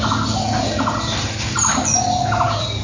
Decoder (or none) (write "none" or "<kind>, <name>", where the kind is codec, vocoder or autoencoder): none